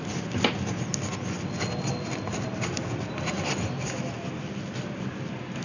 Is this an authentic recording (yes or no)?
yes